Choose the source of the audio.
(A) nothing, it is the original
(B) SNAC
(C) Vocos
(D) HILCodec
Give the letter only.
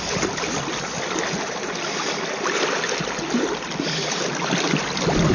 A